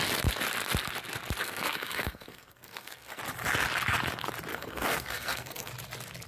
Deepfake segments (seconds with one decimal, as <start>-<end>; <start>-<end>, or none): 1.4-3.2; 4.5-5.7